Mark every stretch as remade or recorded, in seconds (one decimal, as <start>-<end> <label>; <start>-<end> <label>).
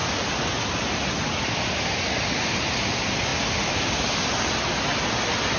0.0-5.6 recorded